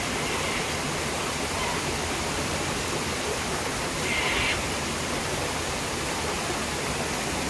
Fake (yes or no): yes